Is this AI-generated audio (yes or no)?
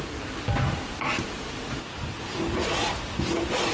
no